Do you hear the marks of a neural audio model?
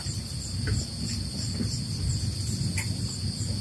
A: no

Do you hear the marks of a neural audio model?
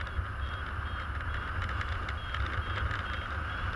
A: no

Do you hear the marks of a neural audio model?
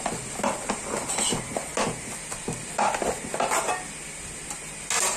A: no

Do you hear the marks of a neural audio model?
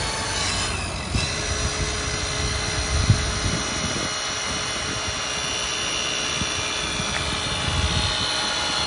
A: no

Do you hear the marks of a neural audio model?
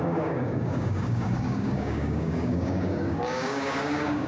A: yes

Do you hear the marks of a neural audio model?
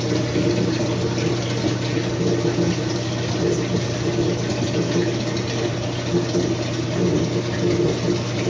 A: no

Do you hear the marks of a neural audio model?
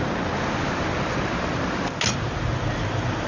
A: no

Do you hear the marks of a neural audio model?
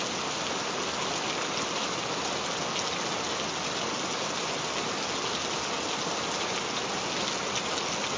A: no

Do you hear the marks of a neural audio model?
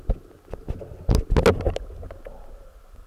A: no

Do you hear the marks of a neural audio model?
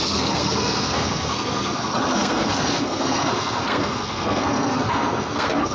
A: yes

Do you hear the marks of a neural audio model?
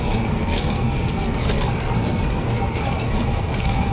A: yes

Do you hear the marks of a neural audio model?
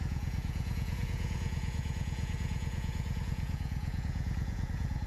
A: yes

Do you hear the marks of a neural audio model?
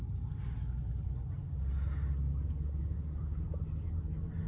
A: no